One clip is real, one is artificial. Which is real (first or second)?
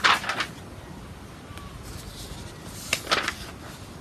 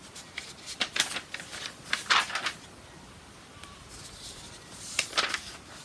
first